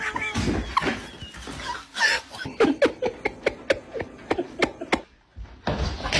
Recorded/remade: recorded